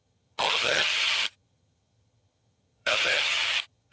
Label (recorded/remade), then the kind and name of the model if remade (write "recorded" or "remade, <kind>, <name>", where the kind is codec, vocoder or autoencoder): remade, vocoder, HiFi-GAN